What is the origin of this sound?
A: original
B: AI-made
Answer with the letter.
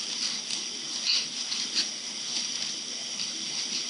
A